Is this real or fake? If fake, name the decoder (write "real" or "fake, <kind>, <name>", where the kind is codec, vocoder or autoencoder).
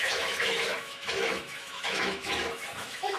fake, autoencoder, DAC-VAE